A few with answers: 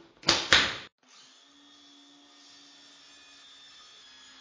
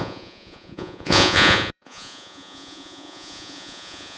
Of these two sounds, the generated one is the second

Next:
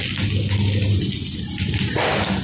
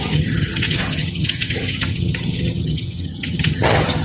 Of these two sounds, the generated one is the second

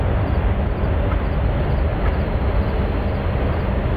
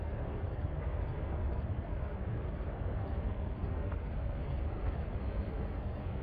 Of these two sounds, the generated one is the second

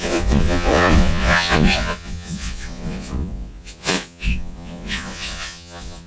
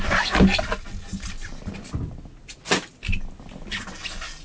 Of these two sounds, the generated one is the first